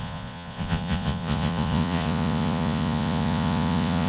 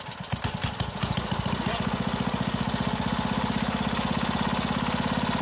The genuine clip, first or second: second